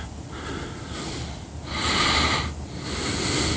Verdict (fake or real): real